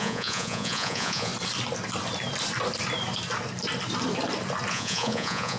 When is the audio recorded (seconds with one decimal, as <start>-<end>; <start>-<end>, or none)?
1.3-4.7